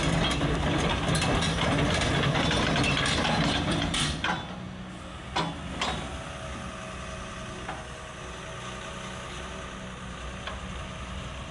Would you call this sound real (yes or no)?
yes